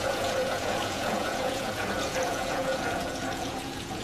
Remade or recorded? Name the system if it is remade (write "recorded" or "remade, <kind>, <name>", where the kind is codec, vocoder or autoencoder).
remade, vocoder, Vocos